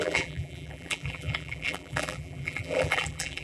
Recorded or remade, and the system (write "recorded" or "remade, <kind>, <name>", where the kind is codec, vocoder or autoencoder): remade, vocoder, BigVGAN v2